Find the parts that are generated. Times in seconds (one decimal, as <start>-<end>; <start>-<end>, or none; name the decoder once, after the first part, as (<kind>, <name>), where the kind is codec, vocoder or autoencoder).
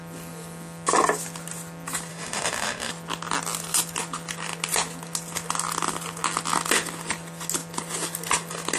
2.1-2.9 (autoencoder, DAC-VAE)